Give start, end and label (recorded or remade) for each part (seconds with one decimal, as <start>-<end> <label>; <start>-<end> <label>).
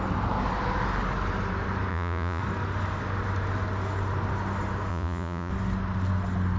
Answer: 0.0-1.9 recorded; 1.9-2.4 remade; 2.4-4.9 recorded; 4.9-5.5 remade; 5.5-6.6 recorded